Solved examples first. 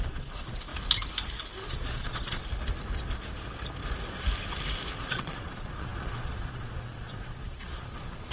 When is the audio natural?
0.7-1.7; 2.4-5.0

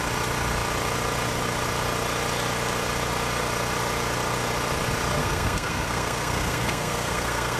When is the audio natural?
0.0-5.2

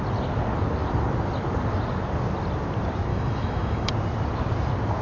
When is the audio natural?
0.0-3.1; 3.9-5.0

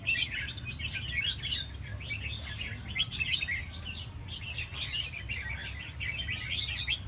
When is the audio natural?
0.0-7.1

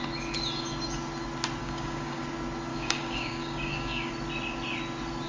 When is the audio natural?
0.0-1.6; 2.2-2.7; 4.1-5.3